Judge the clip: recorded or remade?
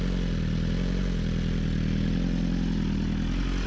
recorded